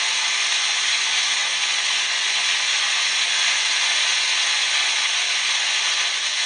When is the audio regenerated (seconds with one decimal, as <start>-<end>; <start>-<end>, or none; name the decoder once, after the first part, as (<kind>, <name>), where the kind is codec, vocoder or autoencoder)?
0.0-6.5 (vocoder, Vocos)